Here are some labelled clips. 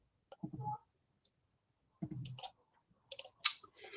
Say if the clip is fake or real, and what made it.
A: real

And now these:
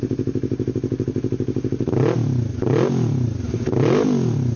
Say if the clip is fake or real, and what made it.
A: real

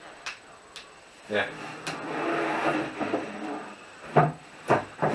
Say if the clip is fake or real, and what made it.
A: real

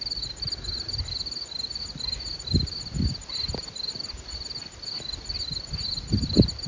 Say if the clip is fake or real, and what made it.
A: real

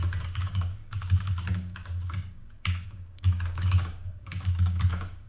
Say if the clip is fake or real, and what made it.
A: fake, codec, DAC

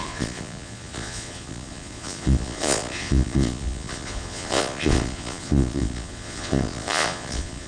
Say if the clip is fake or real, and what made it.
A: fake, vocoder, Vocos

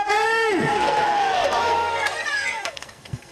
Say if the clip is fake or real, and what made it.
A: fake, codec, SNAC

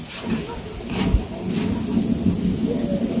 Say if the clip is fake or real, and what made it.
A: real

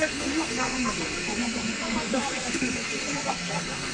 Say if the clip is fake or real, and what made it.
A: fake, codec, SNAC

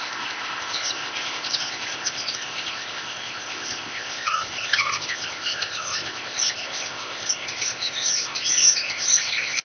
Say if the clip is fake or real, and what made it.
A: fake, codec, ZipCodec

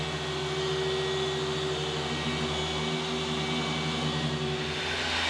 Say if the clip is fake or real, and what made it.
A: real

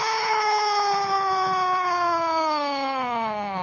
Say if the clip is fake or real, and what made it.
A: fake, codec, HILCodec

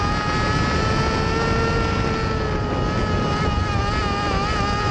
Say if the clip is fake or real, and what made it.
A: real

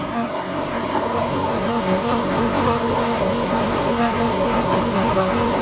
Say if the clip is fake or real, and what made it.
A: fake, codec, SNAC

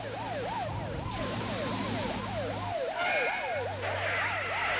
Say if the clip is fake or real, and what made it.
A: real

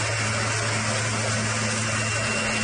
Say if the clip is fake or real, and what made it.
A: real